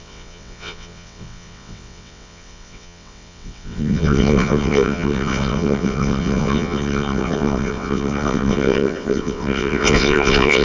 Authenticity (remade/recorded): remade